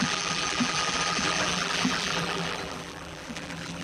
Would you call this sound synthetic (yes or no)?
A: yes